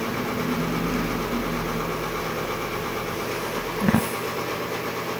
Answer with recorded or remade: recorded